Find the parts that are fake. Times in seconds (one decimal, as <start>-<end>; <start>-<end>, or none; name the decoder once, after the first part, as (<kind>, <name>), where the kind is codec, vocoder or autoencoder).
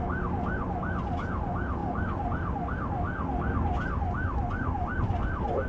none